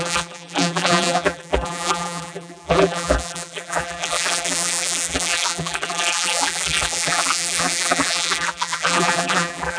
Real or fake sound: fake